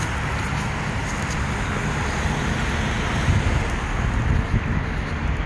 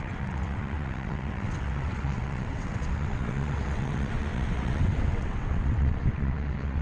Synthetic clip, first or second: second